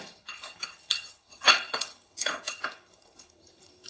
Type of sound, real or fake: fake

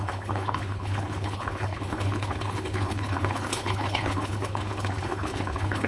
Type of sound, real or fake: fake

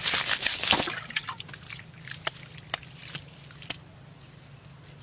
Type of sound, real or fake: real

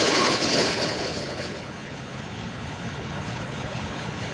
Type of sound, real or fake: fake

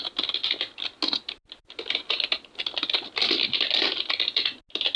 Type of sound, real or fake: real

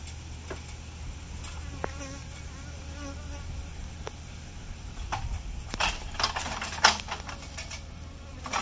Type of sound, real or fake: real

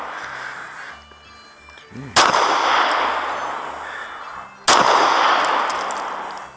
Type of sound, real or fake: real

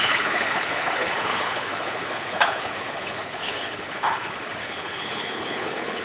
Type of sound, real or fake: fake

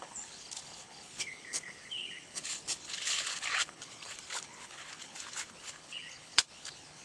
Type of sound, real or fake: fake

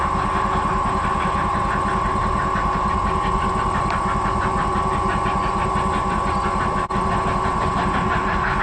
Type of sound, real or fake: real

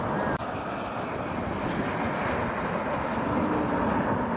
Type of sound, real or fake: real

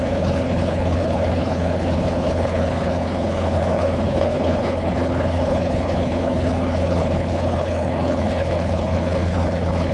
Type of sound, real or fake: fake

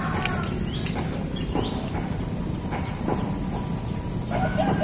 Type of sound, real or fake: real